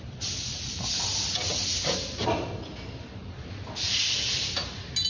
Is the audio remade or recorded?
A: recorded